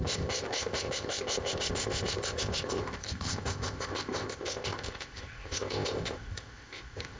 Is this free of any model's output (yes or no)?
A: no